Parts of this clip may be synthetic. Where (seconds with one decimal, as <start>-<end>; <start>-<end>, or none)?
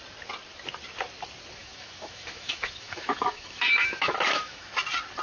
1.6-4.7